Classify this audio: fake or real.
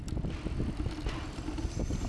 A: real